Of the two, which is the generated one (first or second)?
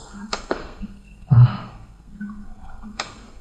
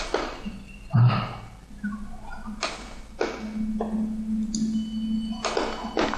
first